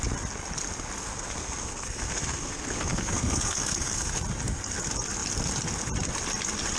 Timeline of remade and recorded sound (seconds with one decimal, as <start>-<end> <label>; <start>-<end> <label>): 0.0-1.0 recorded; 1.0-4.1 remade; 4.1-6.8 recorded